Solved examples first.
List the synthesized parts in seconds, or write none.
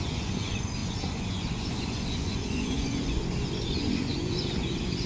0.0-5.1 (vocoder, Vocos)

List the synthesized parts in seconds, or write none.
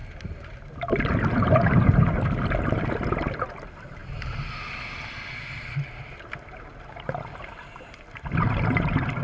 none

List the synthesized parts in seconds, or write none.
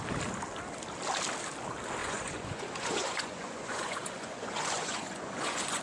2.0-5.8 (vocoder, Vocos)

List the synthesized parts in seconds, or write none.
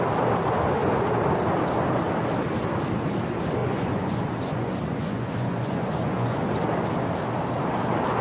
3.6-6.5 (vocoder, Vocos)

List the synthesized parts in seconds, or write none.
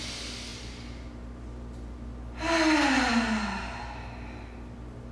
none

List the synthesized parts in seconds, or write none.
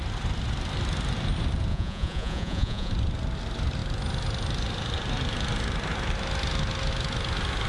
1.7-2.9 (vocoder, Vocos)